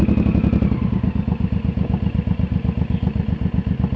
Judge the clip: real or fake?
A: real